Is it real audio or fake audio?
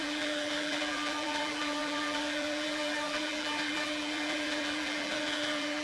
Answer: fake